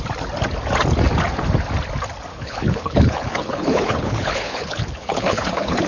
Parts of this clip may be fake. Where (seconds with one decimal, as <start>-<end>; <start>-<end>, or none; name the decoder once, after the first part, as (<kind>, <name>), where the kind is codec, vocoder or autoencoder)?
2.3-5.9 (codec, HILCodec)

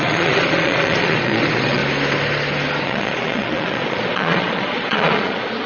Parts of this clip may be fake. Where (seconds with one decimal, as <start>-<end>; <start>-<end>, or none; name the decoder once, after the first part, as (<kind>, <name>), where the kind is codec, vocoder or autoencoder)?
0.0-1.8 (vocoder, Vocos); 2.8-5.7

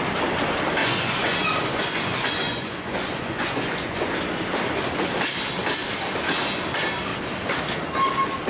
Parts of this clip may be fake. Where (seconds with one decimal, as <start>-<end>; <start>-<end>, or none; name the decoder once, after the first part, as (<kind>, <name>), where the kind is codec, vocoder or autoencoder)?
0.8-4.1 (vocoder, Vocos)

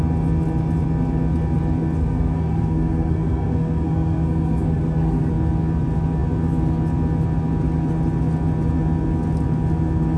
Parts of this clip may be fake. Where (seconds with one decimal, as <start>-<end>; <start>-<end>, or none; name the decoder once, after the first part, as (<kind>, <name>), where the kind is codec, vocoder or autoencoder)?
2.0-5.3 (codec, SNAC)

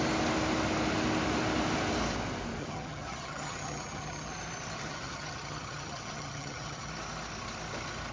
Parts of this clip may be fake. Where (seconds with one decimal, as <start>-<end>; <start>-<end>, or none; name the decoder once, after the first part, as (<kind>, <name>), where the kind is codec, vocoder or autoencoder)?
2.6-4.3 (vocoder, HiFi-GAN); 4.8-6.9

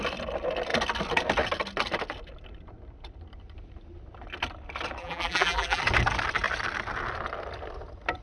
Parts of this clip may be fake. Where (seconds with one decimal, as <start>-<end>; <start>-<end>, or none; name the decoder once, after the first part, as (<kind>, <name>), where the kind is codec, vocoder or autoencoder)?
5.0-5.8 (vocoder, BigVGAN v2)

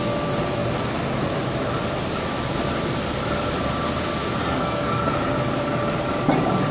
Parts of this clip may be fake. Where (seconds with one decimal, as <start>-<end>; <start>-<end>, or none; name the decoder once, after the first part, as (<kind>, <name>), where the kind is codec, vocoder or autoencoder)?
4.4-5.1 (codec, SNAC)